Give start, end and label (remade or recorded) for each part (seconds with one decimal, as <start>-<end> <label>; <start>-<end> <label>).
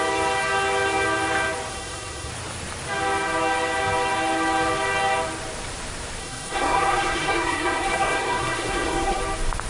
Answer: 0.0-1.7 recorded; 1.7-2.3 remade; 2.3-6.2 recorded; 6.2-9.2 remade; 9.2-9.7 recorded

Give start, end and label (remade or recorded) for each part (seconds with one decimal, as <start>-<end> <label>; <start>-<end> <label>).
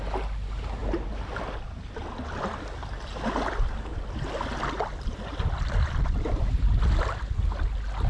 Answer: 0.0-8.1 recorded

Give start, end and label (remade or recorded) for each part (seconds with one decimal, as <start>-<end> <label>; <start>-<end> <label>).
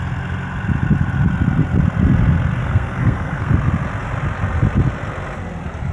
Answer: 0.0-2.6 recorded; 2.6-3.5 remade; 3.5-5.9 recorded